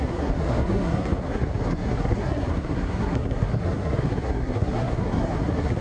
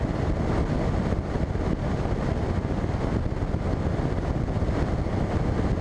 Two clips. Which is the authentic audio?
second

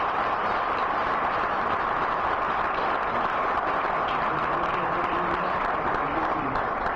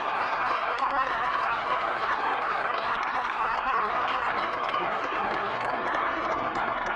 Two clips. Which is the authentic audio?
first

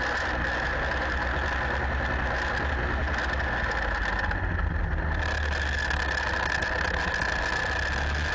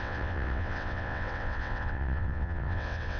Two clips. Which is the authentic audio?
first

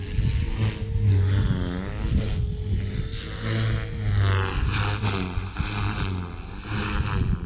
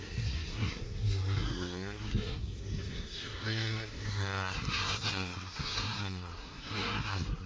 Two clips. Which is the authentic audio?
first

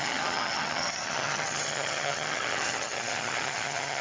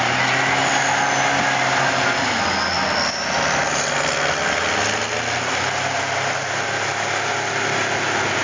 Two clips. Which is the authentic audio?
second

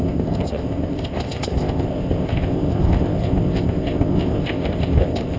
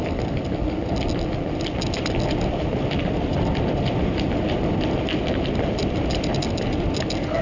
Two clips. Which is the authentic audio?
second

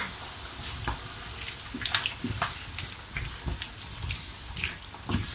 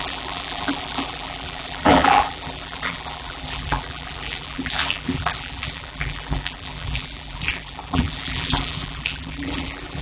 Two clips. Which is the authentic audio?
first